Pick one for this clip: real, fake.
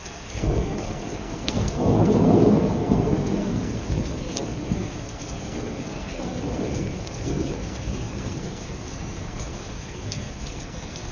fake